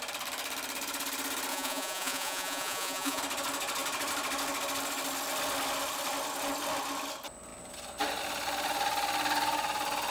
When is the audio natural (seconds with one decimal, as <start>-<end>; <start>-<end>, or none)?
0.0-1.5; 3.2-10.1